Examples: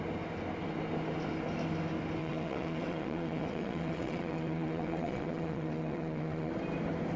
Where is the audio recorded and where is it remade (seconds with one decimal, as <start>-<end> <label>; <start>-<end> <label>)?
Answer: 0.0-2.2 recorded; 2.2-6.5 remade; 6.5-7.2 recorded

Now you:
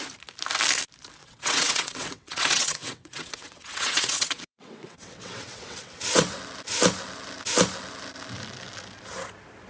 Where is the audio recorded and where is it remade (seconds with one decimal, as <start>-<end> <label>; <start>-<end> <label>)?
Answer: 0.0-1.2 recorded; 1.2-6.4 remade; 6.4-9.7 recorded

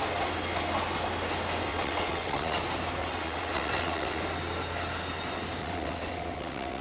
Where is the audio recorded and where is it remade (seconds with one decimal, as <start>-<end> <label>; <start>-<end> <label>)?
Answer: 0.0-1.7 recorded; 1.7-2.6 remade; 2.6-3.0 recorded; 3.0-4.2 remade; 4.2-5.6 recorded; 5.6-6.8 remade

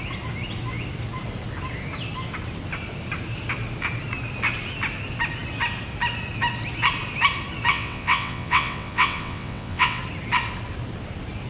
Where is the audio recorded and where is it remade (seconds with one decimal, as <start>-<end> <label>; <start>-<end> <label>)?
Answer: 0.0-7.7 recorded; 7.7-10.0 remade; 10.0-11.5 recorded